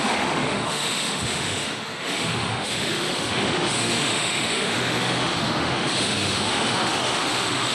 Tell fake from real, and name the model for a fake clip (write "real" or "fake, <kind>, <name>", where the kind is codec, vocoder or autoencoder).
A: fake, autoencoder, DAC-VAE